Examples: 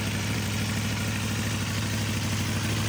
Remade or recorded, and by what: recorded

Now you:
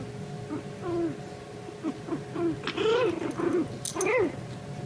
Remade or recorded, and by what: recorded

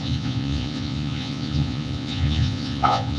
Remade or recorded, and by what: remade, vocoder, Vocos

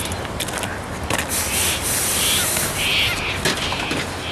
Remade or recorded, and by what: recorded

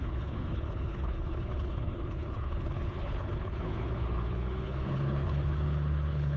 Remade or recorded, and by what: remade, codec, HILCodec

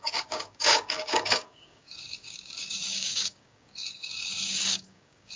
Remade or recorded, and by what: remade, codec, DAC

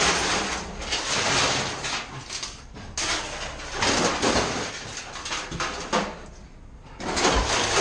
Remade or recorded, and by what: recorded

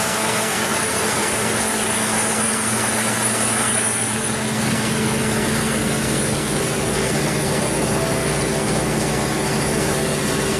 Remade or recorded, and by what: remade, codec, SNAC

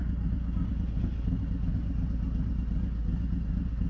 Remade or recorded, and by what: recorded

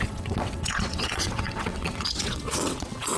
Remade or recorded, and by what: remade, vocoder, WaveNeXt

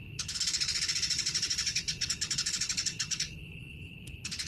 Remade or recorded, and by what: remade, codec, HILCodec